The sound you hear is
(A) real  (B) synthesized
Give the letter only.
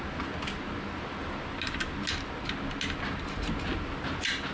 A